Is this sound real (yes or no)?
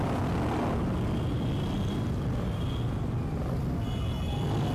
yes